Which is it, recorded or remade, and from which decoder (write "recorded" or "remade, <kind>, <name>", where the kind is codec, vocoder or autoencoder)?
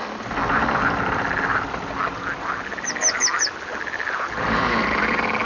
recorded